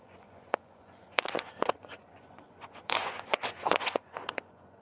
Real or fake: fake